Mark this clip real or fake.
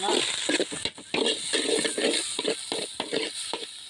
real